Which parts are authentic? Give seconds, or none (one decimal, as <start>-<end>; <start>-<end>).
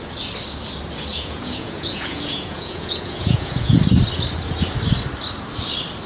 0.0-1.1; 3.8-6.1